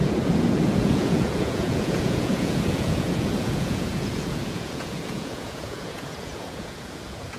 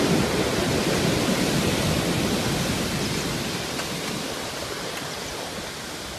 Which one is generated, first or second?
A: first